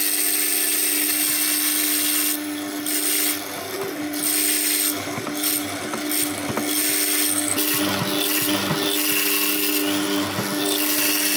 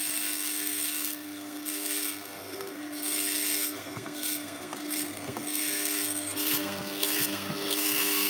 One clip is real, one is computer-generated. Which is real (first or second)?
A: first